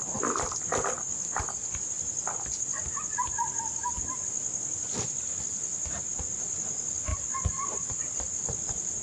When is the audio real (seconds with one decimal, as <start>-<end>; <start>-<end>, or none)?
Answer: 0.0-9.0